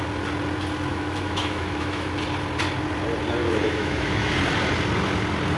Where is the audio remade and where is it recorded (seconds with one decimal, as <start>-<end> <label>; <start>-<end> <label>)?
0.0-0.9 recorded; 0.9-2.1 remade; 2.1-3.4 recorded; 3.4-4.3 remade; 4.3-5.6 recorded